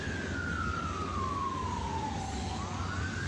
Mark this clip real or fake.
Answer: fake